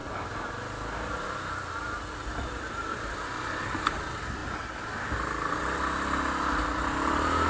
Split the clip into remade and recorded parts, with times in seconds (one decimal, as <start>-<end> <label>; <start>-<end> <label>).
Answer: 0.0-7.5 recorded